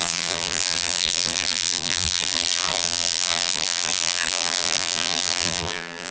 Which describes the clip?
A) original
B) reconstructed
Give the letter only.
B